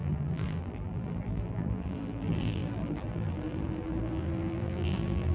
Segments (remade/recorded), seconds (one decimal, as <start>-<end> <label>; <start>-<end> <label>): 0.0-5.3 remade